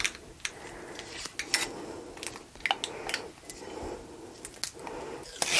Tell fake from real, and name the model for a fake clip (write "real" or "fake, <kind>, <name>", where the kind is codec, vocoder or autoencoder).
real